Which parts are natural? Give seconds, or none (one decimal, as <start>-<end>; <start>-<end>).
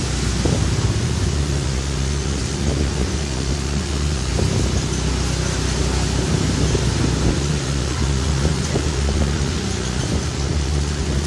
0.0-1.0; 4.3-7.3